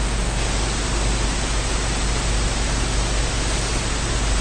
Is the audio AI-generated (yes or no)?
no